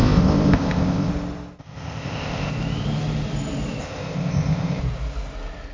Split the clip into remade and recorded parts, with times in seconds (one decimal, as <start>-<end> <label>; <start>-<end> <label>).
0.0-1.1 remade; 1.1-1.6 recorded; 1.6-2.5 remade; 2.5-3.8 recorded; 3.8-4.8 remade; 4.8-5.7 recorded